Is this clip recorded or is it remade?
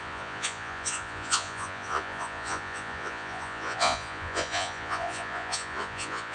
remade